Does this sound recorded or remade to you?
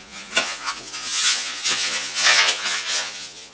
remade